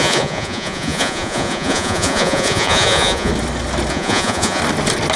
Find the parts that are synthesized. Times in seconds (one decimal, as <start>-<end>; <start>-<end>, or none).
0.0-3.3; 3.9-4.6

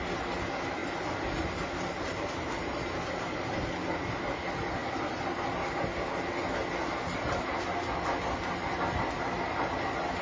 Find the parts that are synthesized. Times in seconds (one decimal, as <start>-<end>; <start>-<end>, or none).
0.8-3.7

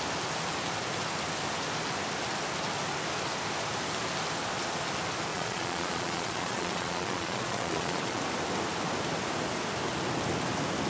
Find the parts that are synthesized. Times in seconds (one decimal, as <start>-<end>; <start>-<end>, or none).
5.3-8.2

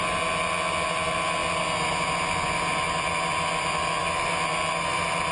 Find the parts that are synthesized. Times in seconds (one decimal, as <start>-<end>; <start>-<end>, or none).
none